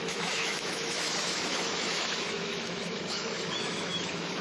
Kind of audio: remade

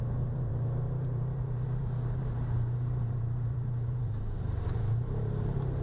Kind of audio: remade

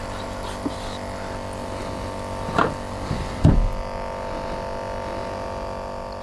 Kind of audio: recorded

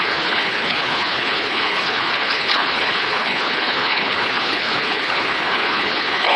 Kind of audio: remade